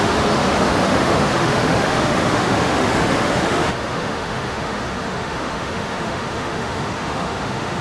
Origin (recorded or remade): remade